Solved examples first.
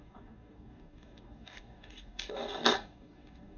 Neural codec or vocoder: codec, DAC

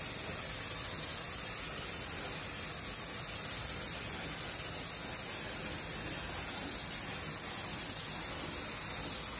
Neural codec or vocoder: none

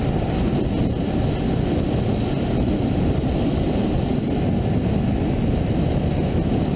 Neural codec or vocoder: none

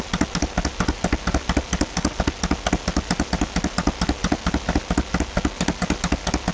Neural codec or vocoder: none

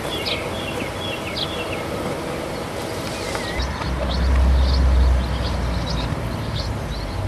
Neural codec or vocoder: none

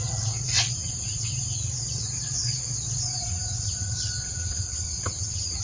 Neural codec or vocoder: vocoder, WaveNeXt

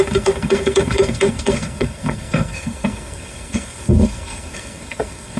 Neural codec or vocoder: codec, SNAC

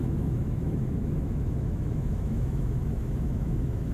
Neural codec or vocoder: autoencoder, DAC-VAE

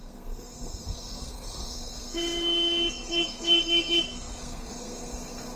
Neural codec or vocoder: codec, SNAC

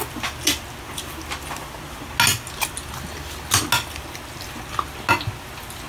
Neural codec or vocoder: none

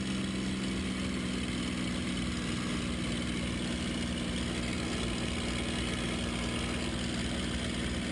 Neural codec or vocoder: none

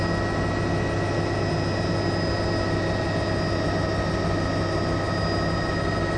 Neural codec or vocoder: none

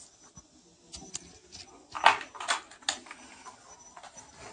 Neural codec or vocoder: none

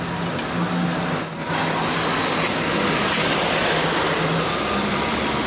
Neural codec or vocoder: none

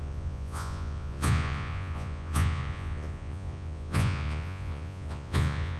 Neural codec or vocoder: vocoder, Vocos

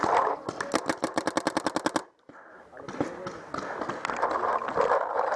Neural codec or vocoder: none